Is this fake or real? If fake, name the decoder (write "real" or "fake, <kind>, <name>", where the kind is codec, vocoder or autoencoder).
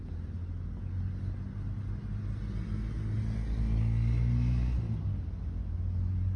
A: real